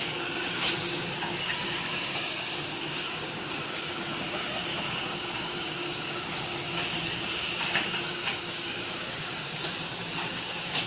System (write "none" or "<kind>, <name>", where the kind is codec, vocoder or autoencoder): codec, DAC